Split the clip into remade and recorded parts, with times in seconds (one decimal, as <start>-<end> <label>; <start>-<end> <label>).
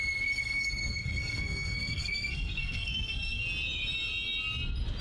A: 0.0-0.4 recorded; 0.4-3.4 remade; 3.4-5.0 recorded